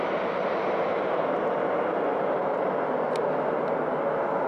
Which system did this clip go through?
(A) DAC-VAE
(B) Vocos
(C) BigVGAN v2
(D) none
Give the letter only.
D